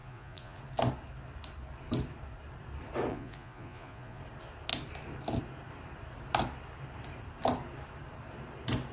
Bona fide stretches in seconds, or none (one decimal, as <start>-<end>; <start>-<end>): 0.6-3.1; 4.2-8.9

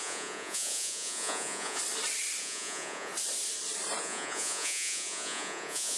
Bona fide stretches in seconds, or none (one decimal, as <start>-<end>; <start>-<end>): 1.8-2.4; 3.1-4.0

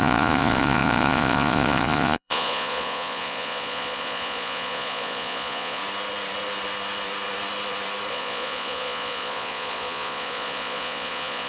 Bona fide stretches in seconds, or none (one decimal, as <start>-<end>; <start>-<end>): 5.8-8.1

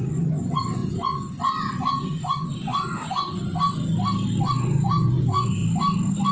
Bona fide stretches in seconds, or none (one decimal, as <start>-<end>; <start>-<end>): 3.5-4.4; 5.6-6.3

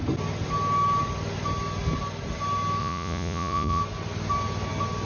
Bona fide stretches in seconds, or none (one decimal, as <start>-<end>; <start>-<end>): 0.0-2.8; 3.8-5.1

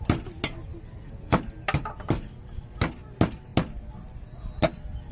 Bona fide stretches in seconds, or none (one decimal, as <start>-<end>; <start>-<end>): 0.0-5.1

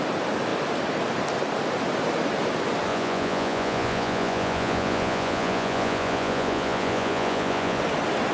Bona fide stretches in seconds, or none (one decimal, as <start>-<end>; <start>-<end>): 0.0-2.9; 7.8-8.3

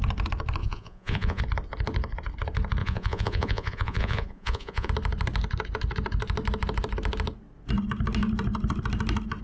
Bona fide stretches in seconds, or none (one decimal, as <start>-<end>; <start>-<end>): 0.0-0.6; 1.4-2.8; 4.9-9.4